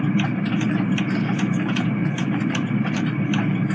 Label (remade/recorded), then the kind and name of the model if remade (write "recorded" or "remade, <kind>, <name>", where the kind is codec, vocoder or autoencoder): remade, vocoder, BigVGAN v2